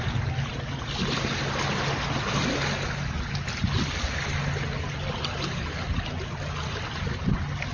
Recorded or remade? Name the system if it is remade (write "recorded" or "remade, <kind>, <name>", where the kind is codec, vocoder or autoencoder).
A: recorded